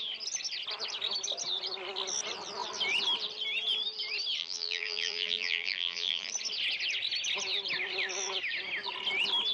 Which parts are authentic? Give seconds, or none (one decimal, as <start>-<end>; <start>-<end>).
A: 0.0-4.4; 6.3-9.5